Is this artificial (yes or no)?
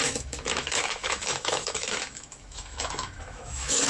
yes